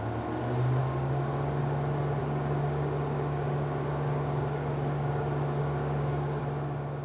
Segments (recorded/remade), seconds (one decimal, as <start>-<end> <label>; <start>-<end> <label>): 0.0-0.8 recorded; 0.8-1.6 remade; 1.6-2.2 recorded; 2.2-6.4 remade; 6.4-7.0 recorded